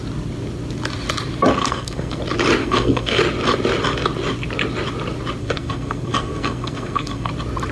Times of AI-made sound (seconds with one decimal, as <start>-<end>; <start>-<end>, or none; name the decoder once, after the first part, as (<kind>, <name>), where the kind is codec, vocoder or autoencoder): 1.5-2.2 (codec, SNAC); 2.6-3.2; 5.4-7.3